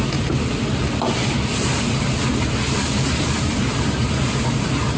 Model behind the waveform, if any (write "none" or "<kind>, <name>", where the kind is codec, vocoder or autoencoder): none